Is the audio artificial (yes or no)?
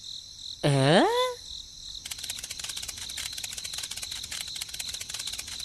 no